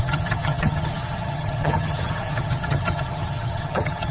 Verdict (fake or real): fake